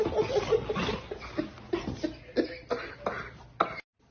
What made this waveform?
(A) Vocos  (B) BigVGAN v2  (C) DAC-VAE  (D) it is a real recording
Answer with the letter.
D